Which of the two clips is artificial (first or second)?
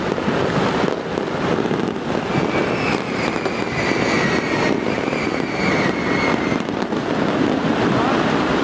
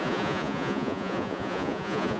second